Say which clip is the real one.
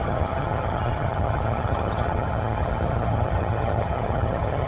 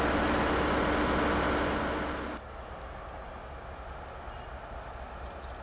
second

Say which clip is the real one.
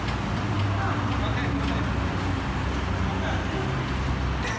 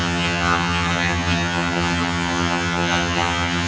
first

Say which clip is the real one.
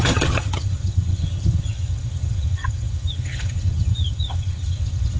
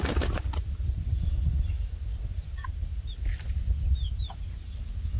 second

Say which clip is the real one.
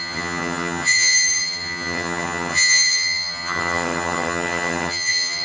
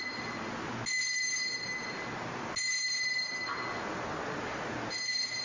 second